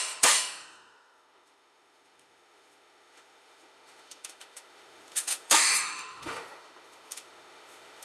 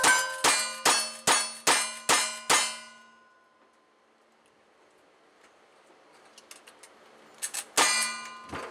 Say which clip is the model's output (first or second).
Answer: first